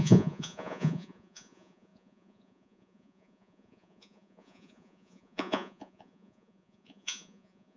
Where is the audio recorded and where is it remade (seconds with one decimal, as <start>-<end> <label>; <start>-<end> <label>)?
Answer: 0.0-7.8 remade